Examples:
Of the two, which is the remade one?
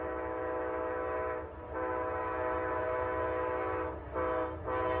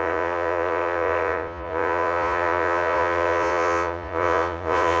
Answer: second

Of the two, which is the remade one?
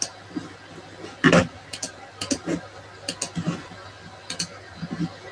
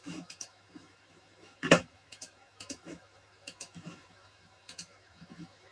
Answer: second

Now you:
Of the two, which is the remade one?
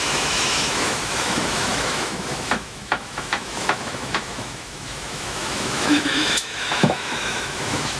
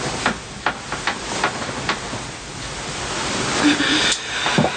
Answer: first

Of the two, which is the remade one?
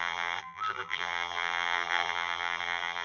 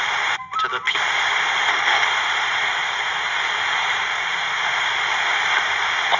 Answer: first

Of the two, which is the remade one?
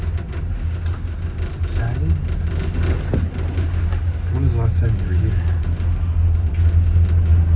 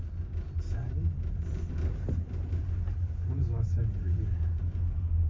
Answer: second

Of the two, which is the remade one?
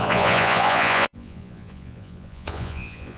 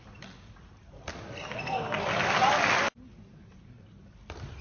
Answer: first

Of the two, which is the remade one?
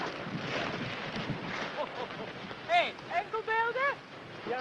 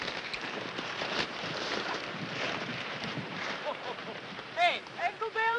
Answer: second